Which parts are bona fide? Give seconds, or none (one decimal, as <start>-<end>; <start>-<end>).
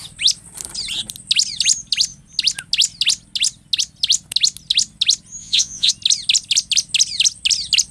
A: 0.0-5.4; 5.9-7.9